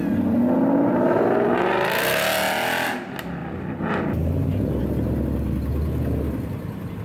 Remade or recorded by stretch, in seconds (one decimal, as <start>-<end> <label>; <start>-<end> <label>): 0.0-7.0 recorded